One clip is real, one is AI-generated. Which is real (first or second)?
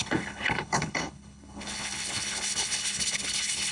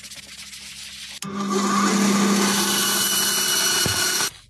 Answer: second